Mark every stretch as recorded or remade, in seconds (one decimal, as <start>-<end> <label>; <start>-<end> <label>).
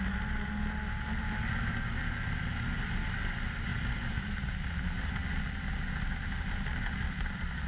0.0-7.7 recorded